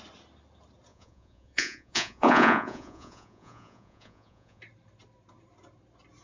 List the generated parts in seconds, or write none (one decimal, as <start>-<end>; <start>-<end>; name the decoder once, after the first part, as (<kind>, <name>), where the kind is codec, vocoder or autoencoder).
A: 0.9-4.6 (vocoder, Vocos)